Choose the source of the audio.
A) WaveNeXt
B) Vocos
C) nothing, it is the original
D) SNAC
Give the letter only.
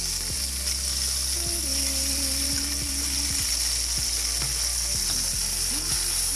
C